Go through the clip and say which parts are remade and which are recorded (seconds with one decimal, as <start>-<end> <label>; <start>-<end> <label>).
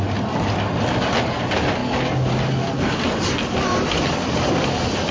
0.0-5.1 recorded